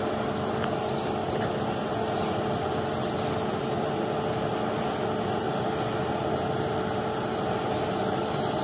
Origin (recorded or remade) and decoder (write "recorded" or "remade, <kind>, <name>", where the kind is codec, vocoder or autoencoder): recorded